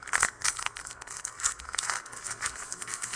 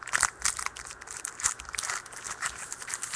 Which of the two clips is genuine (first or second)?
second